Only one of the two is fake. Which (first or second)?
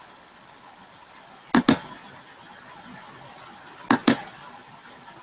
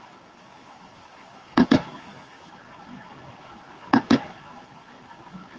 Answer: second